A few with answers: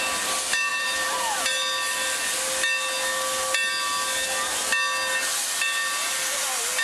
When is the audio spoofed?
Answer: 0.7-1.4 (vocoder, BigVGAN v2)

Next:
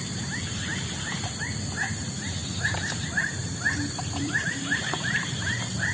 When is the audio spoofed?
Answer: 0.0-0.7 (vocoder, BigVGAN v2); 1.4-5.9

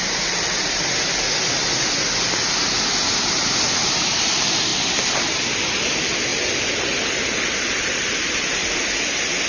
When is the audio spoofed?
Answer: none

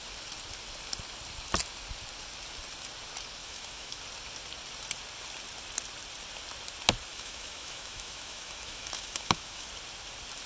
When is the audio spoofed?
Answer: 3.4-4.0 (autoencoder, DAC-VAE); 7.1-9.7

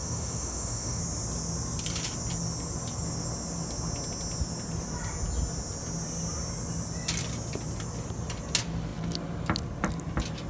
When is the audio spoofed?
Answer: 0.0-1.0 (autoencoder, DAC-VAE)

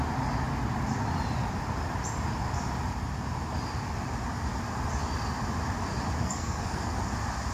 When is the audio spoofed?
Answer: 6.2-7.0 (codec, SNAC)

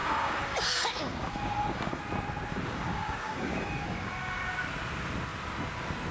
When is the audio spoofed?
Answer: 0.0-2.0 (codec, DAC); 2.5-4.4